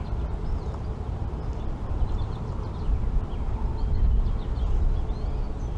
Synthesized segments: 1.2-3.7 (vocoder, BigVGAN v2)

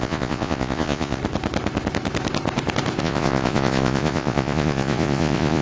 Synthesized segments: 0.0-1.2 (vocoder, Vocos); 3.0-5.6

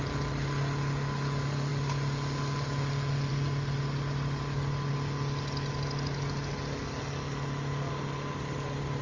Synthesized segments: none

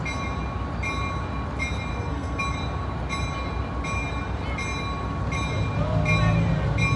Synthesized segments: 1.9-2.4 (codec, SNAC)

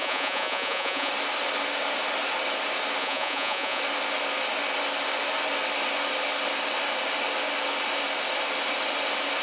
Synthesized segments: 0.0-1.1 (vocoder, Vocos); 3.0-3.8

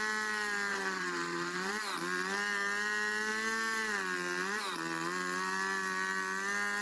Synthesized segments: 0.7-1.7 (vocoder, WaveNeXt)